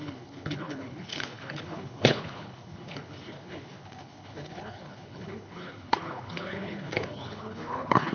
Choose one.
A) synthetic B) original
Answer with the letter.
A